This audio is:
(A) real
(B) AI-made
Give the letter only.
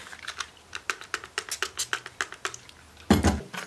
A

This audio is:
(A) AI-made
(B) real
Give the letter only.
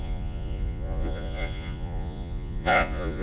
A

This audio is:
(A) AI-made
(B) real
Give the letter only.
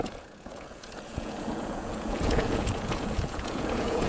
A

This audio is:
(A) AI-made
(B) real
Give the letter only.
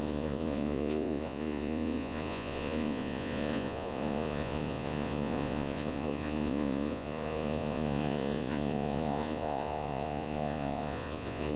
A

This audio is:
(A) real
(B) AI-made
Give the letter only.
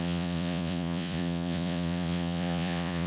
B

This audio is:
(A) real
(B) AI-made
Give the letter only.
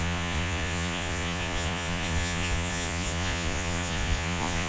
B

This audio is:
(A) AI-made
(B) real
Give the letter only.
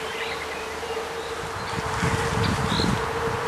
B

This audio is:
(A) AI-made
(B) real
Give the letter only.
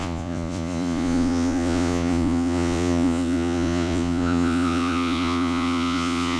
A